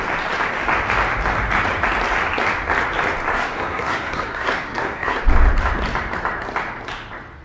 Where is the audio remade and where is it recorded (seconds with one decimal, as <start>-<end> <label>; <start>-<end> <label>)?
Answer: 0.0-3.3 recorded; 3.3-5.2 remade; 5.2-7.4 recorded